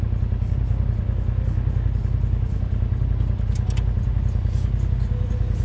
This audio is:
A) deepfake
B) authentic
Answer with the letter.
B